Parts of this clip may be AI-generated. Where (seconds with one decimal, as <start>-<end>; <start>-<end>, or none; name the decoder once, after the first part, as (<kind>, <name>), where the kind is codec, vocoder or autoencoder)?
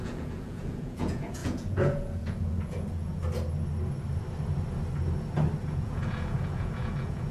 0.0-3.2 (vocoder, Vocos); 5.6-7.3